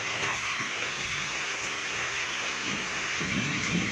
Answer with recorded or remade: remade